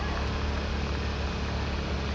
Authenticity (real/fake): real